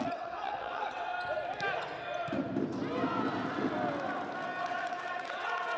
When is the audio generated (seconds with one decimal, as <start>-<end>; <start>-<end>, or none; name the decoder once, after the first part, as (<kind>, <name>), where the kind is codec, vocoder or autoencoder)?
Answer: 0.0-1.1 (vocoder, WaveNeXt); 4.6-5.8